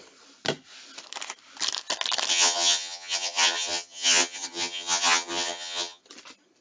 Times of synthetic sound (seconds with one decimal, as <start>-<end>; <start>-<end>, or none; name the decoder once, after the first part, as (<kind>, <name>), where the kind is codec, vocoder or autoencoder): 2.3-6.0 (vocoder, HiFi-GAN)